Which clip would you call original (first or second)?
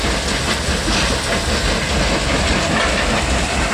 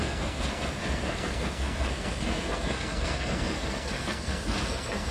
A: first